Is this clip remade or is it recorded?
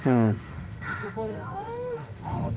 remade